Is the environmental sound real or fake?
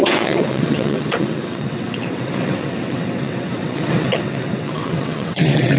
fake